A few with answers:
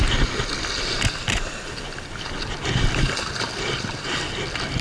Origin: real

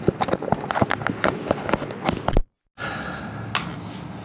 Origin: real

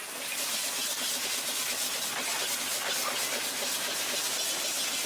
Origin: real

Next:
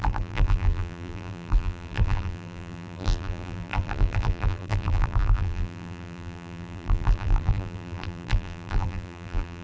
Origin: fake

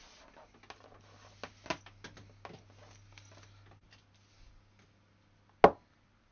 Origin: real